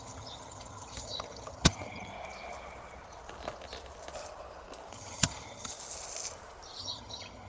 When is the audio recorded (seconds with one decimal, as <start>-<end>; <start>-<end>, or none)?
2.1-4.9; 5.7-6.8

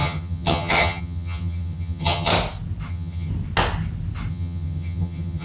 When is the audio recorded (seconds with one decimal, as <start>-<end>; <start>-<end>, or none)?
2.3-2.9; 3.3-4.3

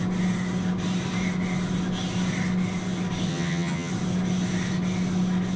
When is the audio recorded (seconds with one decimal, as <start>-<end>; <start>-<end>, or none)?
0.0-3.3; 3.9-5.6

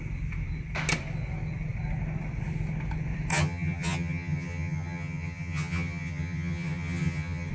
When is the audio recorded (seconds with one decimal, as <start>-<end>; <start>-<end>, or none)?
0.0-3.3

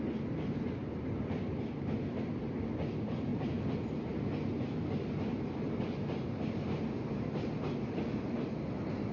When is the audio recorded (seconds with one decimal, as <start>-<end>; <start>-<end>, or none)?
0.0-9.1

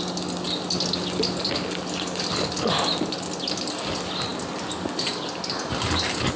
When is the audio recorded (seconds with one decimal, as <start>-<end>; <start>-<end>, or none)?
0.0-6.4